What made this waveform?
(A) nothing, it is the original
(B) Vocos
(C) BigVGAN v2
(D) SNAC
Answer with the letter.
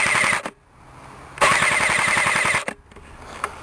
A